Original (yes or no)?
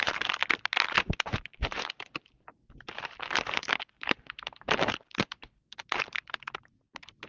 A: no